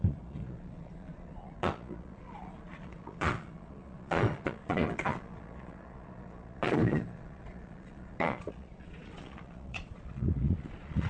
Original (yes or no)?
no